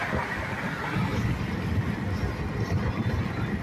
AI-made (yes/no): no